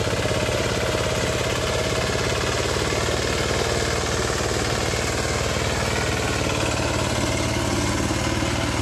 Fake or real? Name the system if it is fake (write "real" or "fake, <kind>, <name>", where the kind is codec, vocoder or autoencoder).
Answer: real